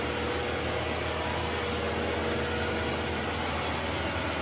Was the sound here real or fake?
real